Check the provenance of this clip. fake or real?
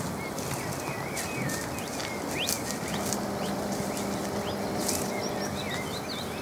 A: real